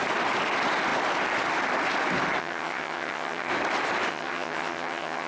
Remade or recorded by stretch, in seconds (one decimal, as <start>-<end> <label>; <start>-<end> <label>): 0.0-2.4 recorded; 2.4-3.5 remade; 3.5-4.1 recorded; 4.1-5.3 remade